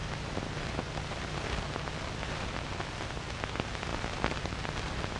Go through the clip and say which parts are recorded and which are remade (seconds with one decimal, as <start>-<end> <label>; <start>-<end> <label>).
0.0-5.2 recorded